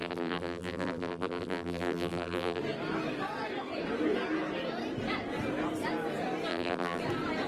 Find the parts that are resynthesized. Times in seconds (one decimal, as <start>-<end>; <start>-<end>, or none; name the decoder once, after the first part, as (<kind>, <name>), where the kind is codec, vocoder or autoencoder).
0.0-2.6 (vocoder, BigVGAN v2); 6.5-7.0